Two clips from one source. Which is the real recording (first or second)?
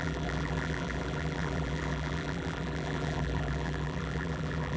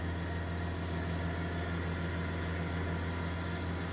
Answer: second